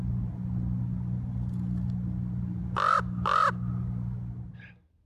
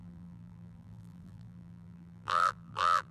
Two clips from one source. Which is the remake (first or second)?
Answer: second